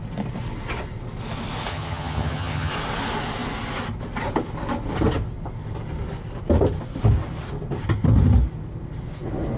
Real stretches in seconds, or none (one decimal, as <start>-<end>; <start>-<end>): 0.0-1.7; 2.7-9.6